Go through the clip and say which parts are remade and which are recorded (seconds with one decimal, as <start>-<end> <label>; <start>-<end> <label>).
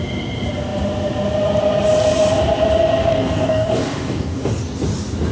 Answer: 0.0-3.0 recorded; 3.0-4.5 remade; 4.5-5.3 recorded